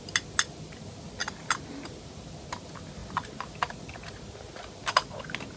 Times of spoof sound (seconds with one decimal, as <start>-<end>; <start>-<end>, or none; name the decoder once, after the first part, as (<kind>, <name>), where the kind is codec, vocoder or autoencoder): none